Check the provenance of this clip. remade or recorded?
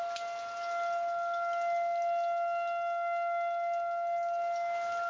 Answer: recorded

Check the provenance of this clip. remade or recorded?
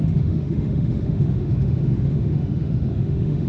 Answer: remade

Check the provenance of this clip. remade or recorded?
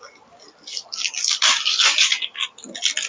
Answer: recorded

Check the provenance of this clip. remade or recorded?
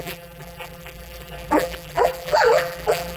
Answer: remade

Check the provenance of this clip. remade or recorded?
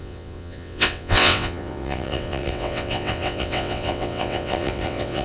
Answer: remade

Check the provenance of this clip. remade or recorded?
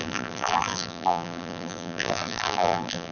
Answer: remade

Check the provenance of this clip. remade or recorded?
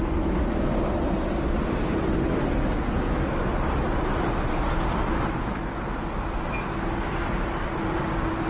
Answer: recorded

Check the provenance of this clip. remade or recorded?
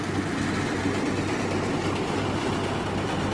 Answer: recorded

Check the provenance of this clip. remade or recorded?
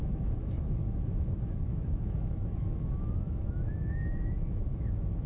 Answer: remade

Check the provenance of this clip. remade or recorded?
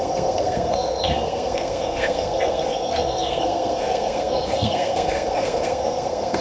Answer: remade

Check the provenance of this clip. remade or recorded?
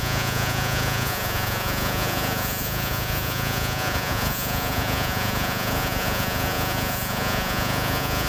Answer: remade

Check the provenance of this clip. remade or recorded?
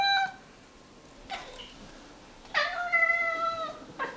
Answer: recorded